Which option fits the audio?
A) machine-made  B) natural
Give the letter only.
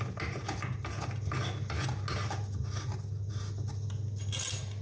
B